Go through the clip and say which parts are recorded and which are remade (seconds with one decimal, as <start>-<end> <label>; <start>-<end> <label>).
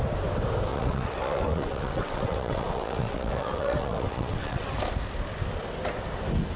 0.0-0.7 recorded; 0.7-4.7 remade; 4.7-6.6 recorded